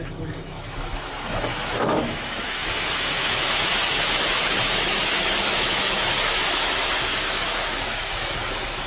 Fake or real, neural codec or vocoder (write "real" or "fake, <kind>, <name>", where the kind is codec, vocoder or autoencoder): fake, autoencoder, DAC-VAE